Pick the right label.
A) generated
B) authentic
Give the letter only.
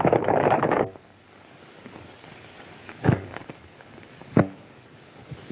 A